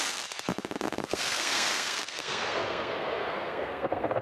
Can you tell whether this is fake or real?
fake